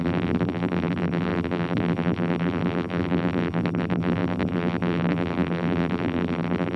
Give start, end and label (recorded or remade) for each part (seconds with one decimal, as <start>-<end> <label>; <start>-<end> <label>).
0.0-6.8 remade